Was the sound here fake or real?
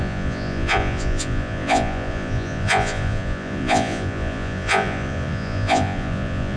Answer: fake